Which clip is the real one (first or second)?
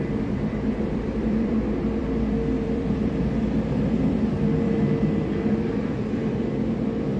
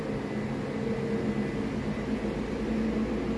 second